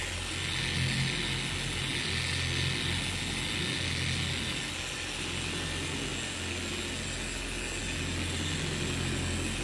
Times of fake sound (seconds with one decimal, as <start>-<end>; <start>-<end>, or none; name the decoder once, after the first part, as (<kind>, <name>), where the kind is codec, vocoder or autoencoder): none